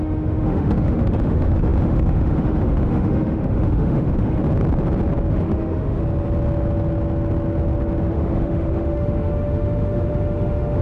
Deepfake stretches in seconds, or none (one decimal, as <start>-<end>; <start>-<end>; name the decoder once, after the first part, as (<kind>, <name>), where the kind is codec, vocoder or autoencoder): 0.0-4.4 (autoencoder, DAC-VAE); 5.3-6.0; 8.1-10.8